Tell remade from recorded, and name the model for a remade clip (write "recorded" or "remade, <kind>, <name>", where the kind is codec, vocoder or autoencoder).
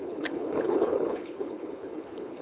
remade, codec, HILCodec